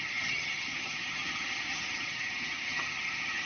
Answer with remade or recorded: remade